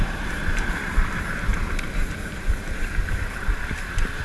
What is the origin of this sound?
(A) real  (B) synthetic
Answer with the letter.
B